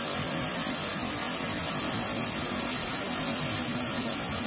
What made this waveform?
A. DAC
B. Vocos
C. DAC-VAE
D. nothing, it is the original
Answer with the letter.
D